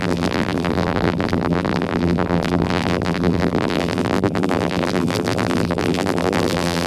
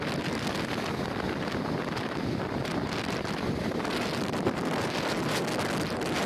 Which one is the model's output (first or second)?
first